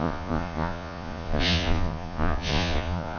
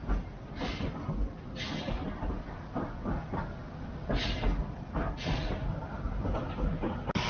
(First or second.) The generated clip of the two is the first